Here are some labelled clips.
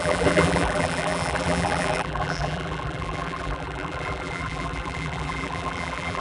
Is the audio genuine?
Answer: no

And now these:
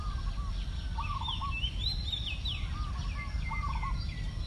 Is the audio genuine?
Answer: yes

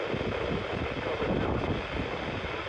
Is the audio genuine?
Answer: yes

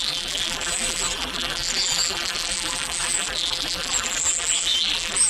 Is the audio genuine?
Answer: no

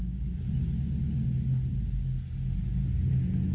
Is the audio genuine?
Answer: yes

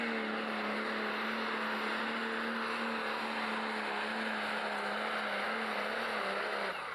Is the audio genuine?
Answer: yes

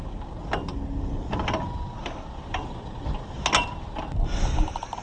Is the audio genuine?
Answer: yes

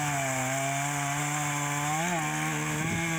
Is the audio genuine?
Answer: yes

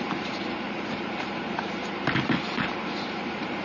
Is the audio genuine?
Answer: no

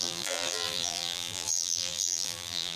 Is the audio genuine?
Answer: no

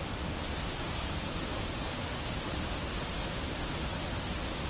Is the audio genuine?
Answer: yes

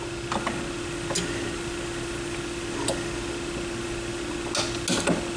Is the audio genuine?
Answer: yes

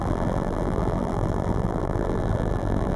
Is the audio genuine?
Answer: no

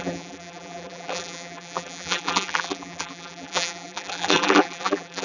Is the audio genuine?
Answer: no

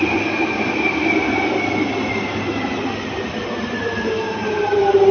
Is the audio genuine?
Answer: yes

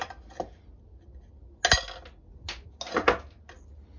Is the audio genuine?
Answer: yes